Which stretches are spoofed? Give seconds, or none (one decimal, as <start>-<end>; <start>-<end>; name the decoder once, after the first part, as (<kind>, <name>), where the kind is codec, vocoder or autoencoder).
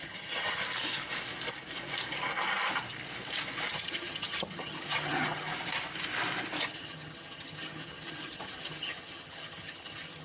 0.0-0.6 (vocoder, HiFi-GAN); 3.7-5.5; 6.6-10.2